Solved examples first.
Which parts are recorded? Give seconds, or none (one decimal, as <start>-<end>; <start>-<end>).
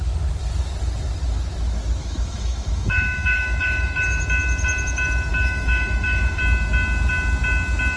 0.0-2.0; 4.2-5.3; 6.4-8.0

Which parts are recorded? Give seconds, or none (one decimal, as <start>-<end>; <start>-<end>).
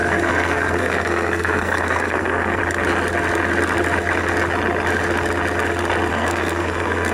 2.6-6.1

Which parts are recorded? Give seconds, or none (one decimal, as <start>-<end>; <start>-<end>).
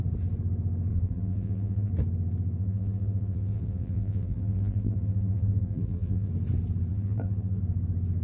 0.0-0.9; 1.9-2.6; 6.3-6.9; 7.6-8.2